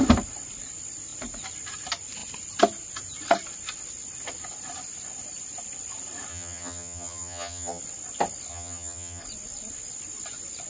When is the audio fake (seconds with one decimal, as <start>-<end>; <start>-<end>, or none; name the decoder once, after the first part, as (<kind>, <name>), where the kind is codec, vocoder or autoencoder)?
6.3-7.8 (vocoder, HiFi-GAN); 8.5-9.2